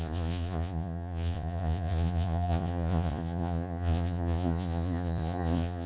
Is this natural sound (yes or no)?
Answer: no